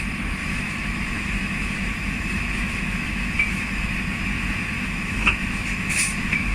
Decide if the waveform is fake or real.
fake